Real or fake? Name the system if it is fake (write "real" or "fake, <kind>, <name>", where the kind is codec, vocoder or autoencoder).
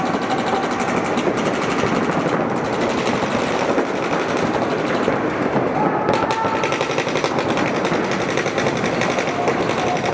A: real